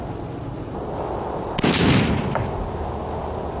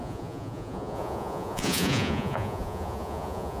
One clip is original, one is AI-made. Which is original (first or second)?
first